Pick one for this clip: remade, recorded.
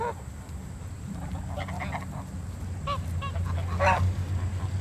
recorded